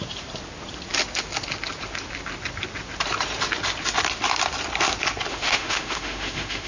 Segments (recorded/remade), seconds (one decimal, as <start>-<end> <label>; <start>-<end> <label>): 0.0-5.3 recorded; 5.3-6.7 remade